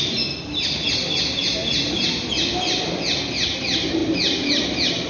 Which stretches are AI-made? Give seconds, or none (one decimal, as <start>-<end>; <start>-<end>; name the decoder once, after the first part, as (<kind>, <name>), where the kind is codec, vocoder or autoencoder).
none